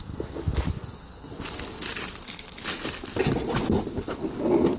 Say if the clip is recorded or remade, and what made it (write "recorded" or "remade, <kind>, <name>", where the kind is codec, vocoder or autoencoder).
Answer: recorded